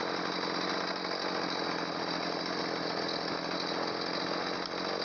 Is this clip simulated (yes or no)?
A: no